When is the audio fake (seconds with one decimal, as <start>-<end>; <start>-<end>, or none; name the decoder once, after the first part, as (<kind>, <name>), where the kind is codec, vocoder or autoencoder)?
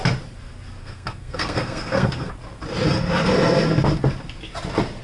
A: 0.8-2.3 (codec, SNAC)